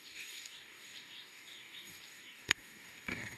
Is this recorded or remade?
remade